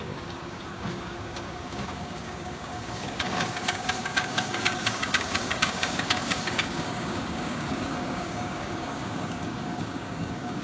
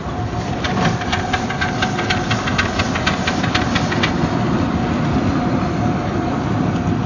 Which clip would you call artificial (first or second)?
first